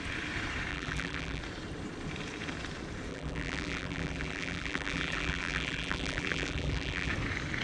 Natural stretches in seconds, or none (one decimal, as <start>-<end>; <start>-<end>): 0.0-0.7; 1.4-3.1; 7.1-7.6